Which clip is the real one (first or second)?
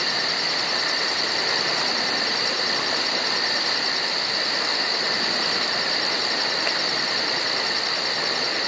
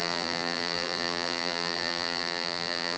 first